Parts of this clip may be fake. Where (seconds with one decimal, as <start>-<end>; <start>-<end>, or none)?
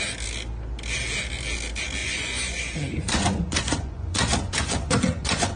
2.0-5.6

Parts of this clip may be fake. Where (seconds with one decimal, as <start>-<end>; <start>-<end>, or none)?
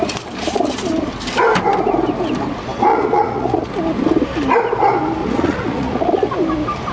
2.9-3.7; 5.2-6.3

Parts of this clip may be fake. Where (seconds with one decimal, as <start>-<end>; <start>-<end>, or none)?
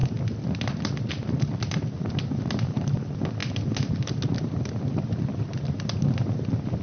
none